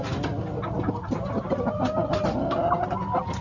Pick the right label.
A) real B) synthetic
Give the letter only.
A